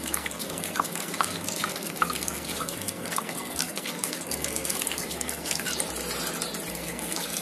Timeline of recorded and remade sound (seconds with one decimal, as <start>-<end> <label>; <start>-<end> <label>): 0.0-5.7 remade; 5.7-6.7 recorded; 6.7-7.4 remade